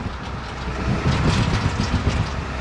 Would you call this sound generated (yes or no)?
no